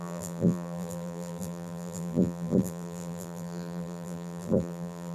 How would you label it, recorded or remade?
remade